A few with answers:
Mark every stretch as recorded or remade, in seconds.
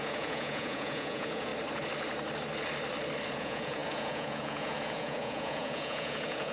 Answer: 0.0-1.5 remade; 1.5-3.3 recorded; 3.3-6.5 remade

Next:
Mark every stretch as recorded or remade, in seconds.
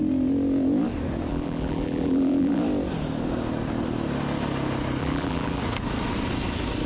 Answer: 0.0-1.3 recorded; 1.3-2.6 remade; 2.6-5.0 recorded; 5.0-5.6 remade; 5.6-6.9 recorded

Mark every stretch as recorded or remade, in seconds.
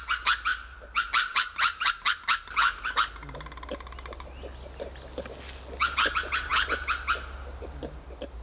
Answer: 0.0-0.5 recorded; 0.5-1.9 remade; 1.9-8.4 recorded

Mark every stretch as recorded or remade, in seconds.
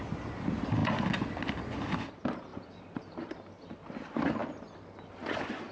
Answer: 0.0-2.5 recorded; 2.5-3.3 remade; 3.3-5.7 recorded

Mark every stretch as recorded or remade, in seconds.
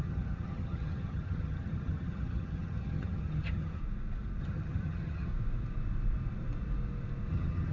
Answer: 0.0-3.8 remade; 3.8-4.4 recorded; 4.4-5.3 remade; 5.3-7.3 recorded; 7.3-7.7 remade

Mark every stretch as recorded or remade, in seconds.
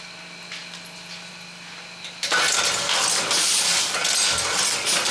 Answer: 0.0-5.1 recorded